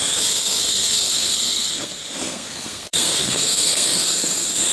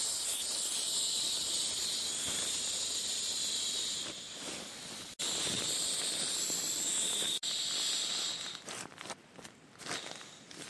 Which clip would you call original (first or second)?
second